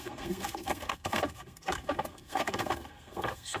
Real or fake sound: fake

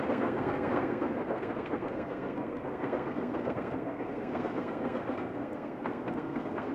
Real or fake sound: fake